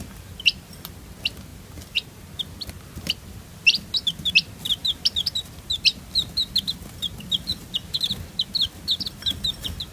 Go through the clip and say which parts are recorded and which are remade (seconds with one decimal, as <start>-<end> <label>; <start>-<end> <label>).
0.0-9.9 recorded